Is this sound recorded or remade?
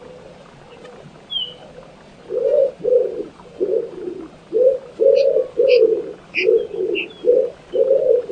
recorded